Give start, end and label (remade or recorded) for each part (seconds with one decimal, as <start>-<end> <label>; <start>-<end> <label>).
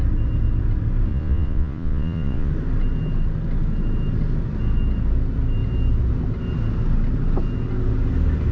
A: 0.0-1.1 recorded; 1.1-2.5 remade; 2.5-8.5 recorded